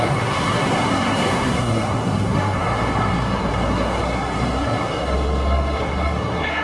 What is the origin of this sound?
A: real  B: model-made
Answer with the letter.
B